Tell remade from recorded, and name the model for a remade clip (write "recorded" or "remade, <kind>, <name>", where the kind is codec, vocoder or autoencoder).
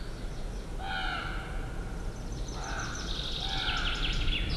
recorded